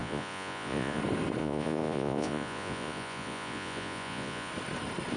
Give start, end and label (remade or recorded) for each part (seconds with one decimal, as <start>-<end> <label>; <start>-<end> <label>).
0.0-1.0 remade; 1.0-1.4 recorded; 1.4-4.5 remade; 4.5-5.2 recorded